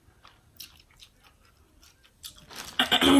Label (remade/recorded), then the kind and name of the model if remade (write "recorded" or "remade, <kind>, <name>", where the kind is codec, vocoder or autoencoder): recorded